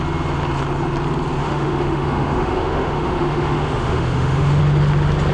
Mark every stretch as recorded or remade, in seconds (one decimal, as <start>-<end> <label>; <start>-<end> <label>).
0.0-1.4 recorded; 1.4-4.6 remade; 4.6-5.3 recorded